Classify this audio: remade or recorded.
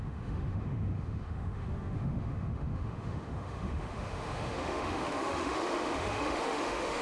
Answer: remade